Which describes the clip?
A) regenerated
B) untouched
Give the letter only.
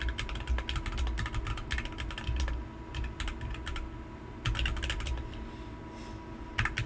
B